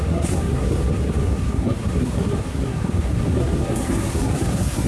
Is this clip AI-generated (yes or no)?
yes